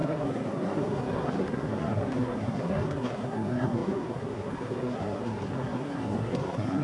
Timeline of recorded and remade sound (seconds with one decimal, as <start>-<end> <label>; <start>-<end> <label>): 0.0-6.8 remade

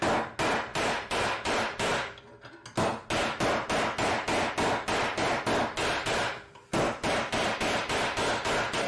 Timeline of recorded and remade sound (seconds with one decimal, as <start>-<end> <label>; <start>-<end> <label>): 0.0-0.7 recorded; 0.7-2.2 remade; 2.2-7.0 recorded; 7.0-8.0 remade; 8.0-8.9 recorded

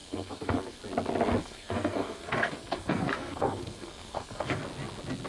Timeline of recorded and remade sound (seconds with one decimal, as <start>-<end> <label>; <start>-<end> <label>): 0.0-0.8 remade; 0.8-1.4 recorded; 1.4-4.6 remade; 4.6-5.3 recorded